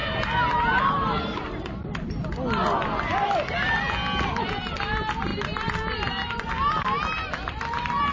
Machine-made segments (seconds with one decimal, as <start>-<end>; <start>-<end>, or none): none